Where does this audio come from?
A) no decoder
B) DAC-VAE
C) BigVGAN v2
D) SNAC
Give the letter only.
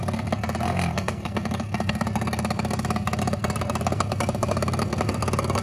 D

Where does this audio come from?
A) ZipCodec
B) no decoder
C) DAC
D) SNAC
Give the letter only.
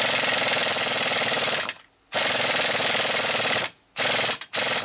B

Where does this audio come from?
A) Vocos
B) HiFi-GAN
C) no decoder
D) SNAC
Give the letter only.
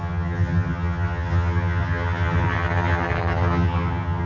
B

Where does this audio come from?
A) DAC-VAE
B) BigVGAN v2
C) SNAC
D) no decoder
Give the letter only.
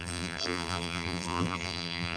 B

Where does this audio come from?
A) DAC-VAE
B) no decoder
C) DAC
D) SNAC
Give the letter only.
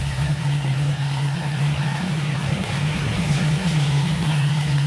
D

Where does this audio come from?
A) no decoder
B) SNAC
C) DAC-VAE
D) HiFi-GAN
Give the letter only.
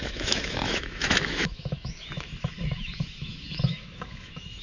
C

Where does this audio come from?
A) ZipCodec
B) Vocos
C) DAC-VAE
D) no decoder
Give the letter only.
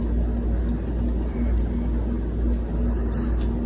D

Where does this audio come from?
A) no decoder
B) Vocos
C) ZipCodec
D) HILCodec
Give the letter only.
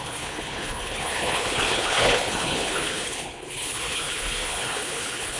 D